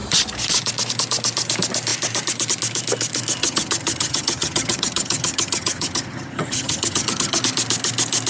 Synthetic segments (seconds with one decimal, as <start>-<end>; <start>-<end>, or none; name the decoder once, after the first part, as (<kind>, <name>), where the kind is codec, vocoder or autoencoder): 3.4-7.4 (vocoder, HiFi-GAN)